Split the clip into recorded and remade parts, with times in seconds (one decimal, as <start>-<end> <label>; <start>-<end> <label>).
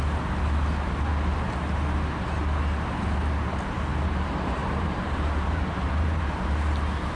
0.0-4.6 recorded; 4.6-6.4 remade; 6.4-7.2 recorded